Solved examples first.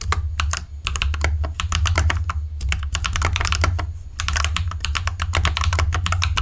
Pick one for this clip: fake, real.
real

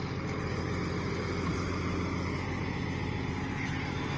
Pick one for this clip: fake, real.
real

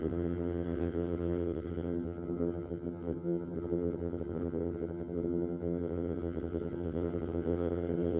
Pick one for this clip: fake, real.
fake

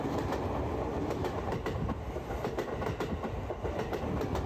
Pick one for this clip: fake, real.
real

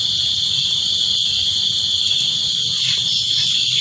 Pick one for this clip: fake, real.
real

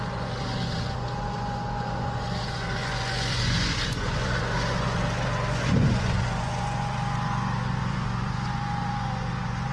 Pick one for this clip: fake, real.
fake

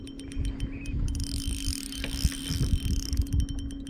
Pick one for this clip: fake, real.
real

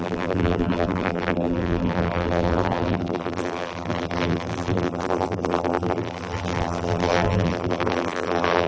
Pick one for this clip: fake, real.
fake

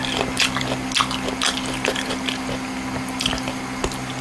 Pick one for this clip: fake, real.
real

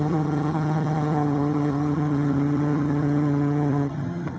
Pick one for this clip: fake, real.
fake